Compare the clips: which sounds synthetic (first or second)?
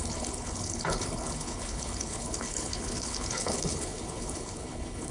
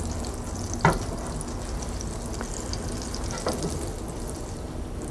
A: first